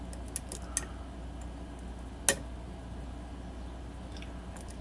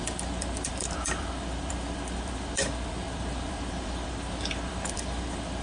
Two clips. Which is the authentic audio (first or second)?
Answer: first